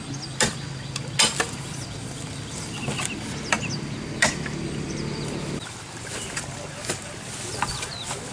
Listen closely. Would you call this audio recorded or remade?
recorded